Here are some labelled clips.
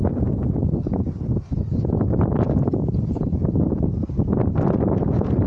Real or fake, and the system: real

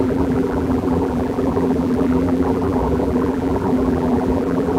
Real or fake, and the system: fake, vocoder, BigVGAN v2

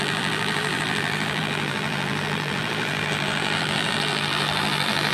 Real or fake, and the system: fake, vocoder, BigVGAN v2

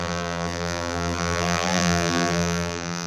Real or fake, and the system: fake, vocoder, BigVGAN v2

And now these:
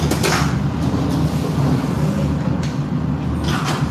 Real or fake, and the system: real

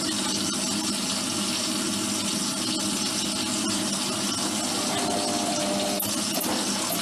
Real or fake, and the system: real